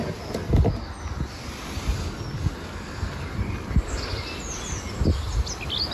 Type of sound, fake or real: real